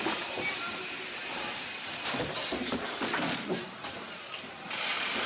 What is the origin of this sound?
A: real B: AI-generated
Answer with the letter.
B